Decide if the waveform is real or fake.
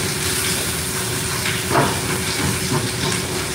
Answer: real